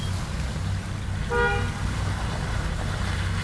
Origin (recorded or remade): recorded